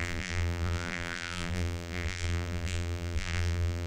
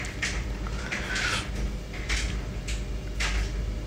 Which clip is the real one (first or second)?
second